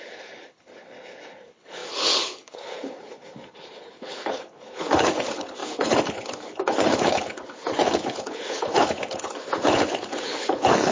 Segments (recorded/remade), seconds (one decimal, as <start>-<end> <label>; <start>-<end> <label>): 0.0-10.9 remade